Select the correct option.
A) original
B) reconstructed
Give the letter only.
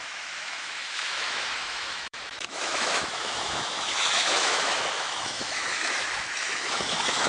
B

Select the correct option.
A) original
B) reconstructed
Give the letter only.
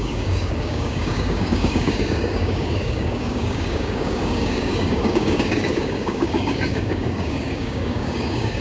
B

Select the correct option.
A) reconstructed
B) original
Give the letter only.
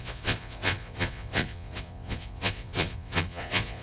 A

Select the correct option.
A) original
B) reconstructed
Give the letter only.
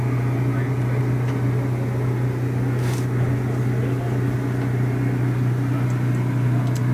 A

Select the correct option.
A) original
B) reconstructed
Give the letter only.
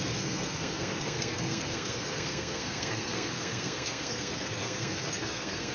B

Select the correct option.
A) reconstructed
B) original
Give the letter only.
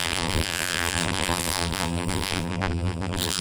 A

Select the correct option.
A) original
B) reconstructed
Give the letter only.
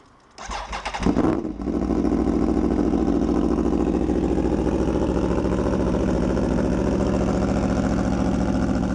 A